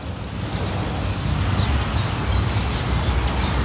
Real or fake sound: real